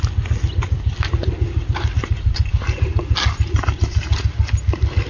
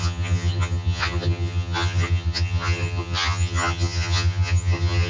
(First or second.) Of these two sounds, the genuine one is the first